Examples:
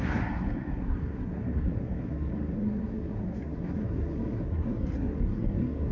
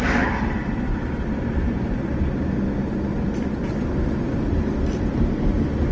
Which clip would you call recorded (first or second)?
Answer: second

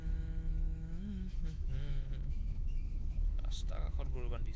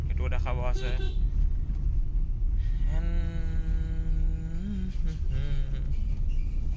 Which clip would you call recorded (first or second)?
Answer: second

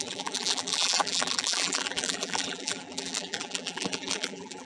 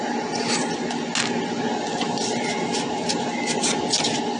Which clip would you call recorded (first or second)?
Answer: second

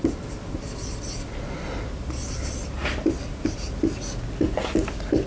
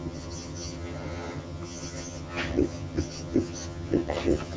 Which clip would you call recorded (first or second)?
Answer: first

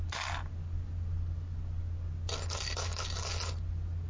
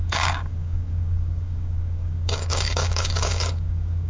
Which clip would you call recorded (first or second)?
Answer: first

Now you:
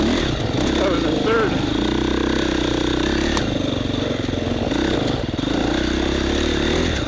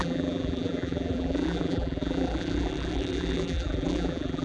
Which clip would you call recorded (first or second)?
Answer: first